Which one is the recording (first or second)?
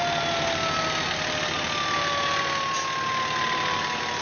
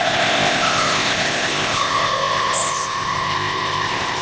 first